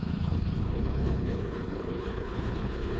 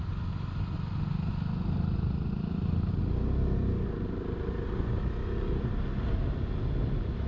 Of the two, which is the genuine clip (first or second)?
second